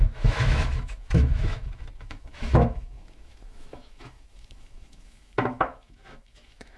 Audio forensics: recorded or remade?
remade